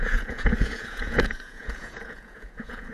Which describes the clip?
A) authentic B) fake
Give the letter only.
B